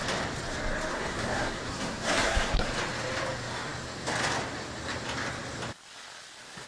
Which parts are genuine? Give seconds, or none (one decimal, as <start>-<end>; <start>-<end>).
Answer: 0.0-0.9; 2.7-6.7